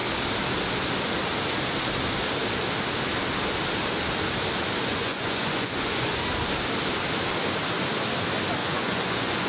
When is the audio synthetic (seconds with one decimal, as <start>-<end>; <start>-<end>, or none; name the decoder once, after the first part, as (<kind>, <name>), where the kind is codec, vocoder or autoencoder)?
4.8-6.2 (vocoder, Vocos); 8.6-9.5